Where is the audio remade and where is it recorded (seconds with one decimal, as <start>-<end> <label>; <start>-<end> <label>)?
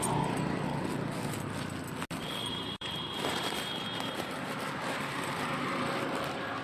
0.0-2.4 recorded; 2.4-5.4 remade; 5.4-6.6 recorded